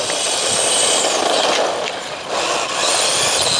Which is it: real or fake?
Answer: real